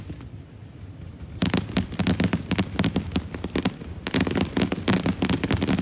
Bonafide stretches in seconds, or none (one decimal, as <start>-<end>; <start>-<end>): 0.0-5.8